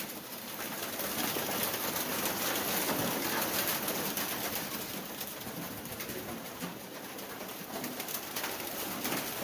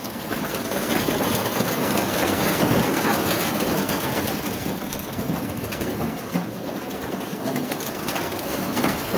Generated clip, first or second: second